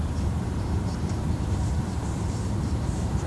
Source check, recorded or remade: remade